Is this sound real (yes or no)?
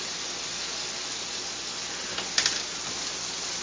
yes